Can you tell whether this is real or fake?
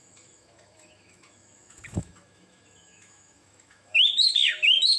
fake